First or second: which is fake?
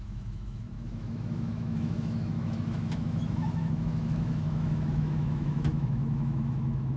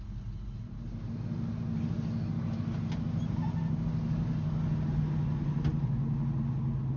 first